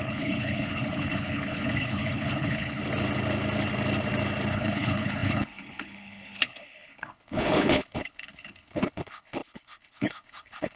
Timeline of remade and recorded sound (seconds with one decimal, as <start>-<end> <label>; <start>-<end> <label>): 0.0-2.8 remade; 2.8-4.5 recorded; 4.5-10.8 remade

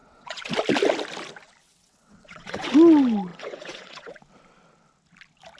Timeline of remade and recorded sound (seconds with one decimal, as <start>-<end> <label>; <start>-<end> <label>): 0.0-0.5 remade; 0.5-1.6 recorded; 1.6-2.7 remade; 2.7-3.3 recorded; 3.3-4.2 remade; 4.2-5.6 recorded

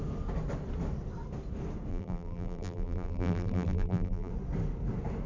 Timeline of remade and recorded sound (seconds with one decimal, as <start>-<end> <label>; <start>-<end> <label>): 0.0-1.9 recorded; 1.9-4.3 remade; 4.3-5.3 recorded

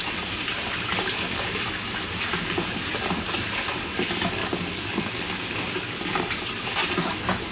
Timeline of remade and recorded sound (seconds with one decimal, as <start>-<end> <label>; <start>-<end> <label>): 0.0-4.4 recorded; 4.4-6.2 remade; 6.2-7.5 recorded

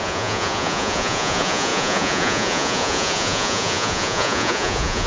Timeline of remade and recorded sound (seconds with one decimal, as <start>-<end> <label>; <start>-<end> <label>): 0.0-5.1 remade